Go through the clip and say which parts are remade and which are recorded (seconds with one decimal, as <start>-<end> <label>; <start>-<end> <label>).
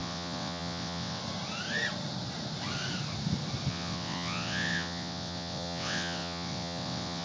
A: 0.0-1.2 remade; 1.2-3.7 recorded; 3.7-7.2 remade